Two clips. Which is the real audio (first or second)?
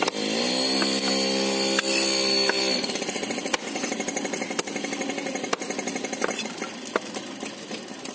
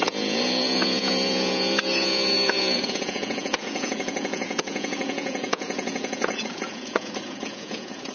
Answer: first